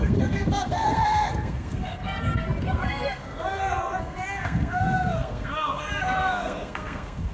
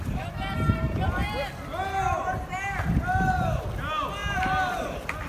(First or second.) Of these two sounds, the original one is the second